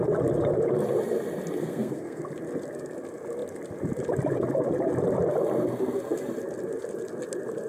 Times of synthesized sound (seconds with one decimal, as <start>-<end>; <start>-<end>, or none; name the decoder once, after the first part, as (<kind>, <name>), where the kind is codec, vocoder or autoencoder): 1.6-2.2 (codec, SNAC)